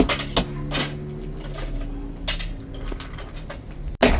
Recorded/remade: recorded